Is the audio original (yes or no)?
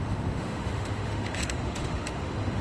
no